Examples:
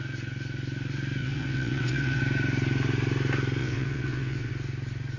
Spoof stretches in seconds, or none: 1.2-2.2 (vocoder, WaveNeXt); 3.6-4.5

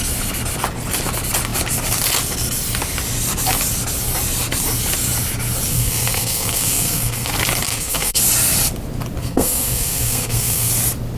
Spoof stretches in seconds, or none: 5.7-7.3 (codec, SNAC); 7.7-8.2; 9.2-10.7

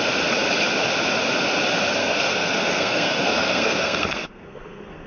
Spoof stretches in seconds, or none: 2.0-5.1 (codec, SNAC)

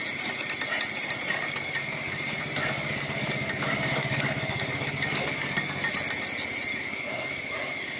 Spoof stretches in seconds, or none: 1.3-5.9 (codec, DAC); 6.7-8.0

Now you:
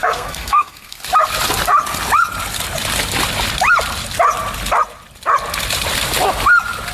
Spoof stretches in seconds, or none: 0.0-1.0 (codec, SNAC)

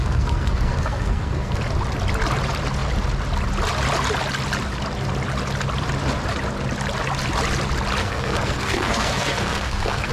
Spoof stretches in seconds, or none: 0.0-1.6 (codec, SNAC); 8.0-10.1

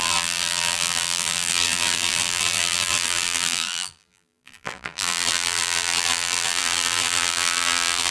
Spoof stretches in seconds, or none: 0.0-8.1 (vocoder, BigVGAN v2)